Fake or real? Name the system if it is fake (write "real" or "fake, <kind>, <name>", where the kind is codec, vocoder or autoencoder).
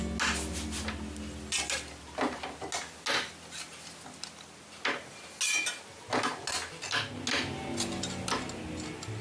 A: real